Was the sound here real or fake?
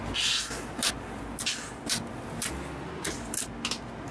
real